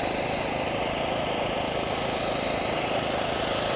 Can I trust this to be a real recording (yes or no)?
yes